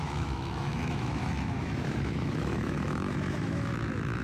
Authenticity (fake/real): fake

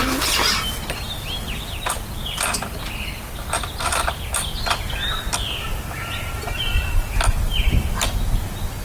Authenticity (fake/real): real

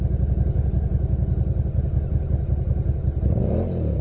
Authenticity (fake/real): real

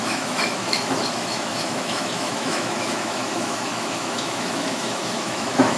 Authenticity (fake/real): fake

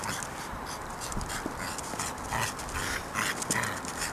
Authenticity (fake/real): real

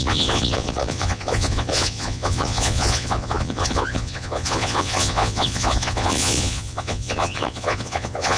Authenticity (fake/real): fake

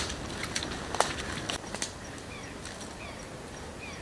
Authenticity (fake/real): real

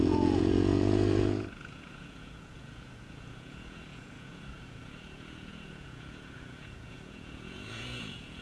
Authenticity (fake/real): fake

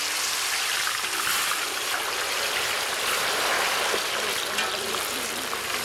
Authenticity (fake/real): fake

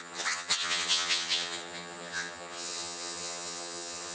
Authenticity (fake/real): fake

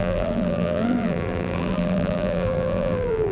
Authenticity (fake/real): fake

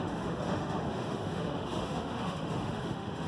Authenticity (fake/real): fake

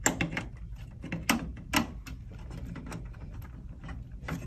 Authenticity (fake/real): real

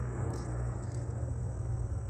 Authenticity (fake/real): fake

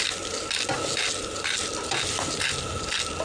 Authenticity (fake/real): real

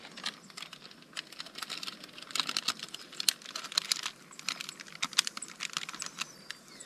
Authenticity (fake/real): real